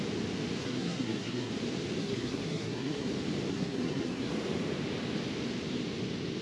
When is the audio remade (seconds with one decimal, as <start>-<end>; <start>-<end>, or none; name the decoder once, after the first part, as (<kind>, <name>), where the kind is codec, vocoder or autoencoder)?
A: 0.6-1.5 (codec, SNAC); 2.0-3.1; 3.5-4.3